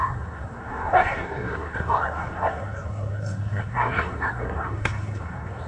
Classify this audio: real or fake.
fake